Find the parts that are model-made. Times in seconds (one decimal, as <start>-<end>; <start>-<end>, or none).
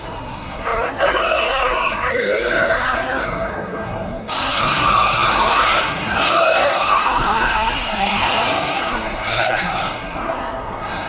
0.0-11.1